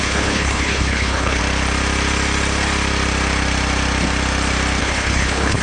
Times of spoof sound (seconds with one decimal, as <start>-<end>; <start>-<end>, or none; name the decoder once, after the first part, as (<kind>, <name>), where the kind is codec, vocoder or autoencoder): 0.0-1.4 (codec, HILCodec); 4.8-5.6